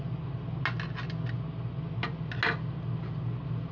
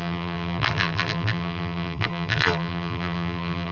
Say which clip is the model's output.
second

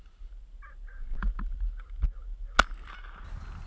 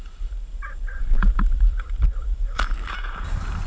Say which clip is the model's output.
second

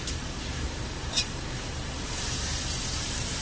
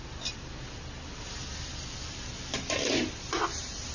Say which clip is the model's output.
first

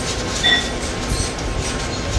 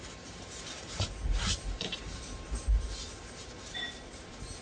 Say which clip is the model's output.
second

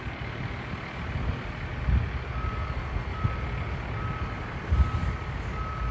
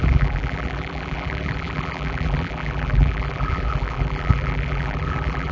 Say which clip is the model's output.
second